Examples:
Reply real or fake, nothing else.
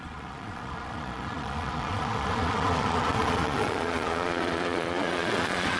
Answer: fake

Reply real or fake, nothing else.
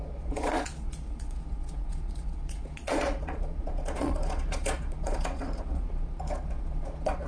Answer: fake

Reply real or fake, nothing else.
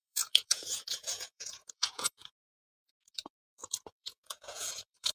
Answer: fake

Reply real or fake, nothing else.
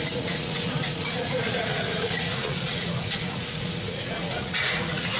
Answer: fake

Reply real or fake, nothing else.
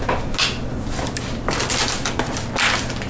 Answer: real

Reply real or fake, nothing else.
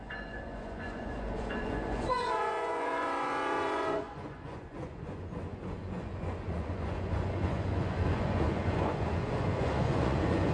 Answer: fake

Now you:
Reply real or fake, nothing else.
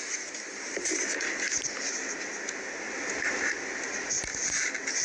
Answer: real